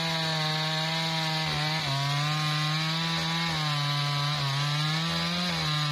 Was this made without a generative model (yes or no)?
yes